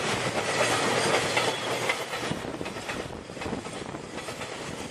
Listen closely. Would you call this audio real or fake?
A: real